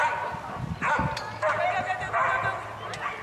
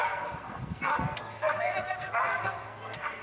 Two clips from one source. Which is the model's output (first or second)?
second